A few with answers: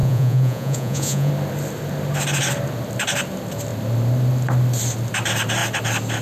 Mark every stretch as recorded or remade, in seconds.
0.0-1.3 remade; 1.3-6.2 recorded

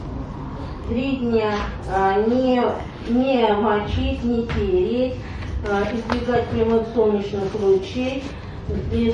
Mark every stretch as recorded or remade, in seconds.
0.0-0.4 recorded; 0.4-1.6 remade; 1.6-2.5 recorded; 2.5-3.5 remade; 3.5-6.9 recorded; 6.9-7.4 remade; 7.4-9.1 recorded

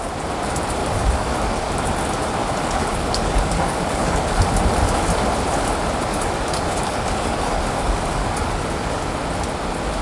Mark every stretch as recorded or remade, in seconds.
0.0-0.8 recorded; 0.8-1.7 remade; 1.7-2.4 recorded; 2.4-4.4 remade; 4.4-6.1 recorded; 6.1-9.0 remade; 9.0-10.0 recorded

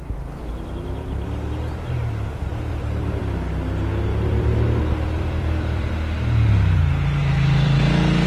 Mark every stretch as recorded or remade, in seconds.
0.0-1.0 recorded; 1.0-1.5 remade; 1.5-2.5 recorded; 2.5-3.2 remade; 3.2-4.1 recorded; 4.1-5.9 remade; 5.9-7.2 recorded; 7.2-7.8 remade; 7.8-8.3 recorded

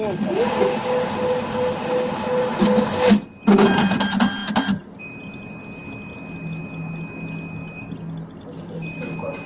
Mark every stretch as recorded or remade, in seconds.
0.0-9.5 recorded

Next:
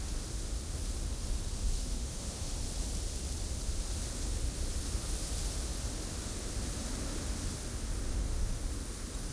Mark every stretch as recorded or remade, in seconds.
0.0-1.8 recorded; 1.8-2.5 remade; 2.5-8.1 recorded; 8.1-8.6 remade; 8.6-9.3 recorded